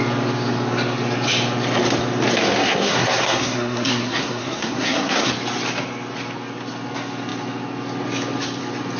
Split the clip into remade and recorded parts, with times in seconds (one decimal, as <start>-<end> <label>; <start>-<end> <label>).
0.0-2.6 recorded; 2.6-5.3 remade; 5.3-9.0 recorded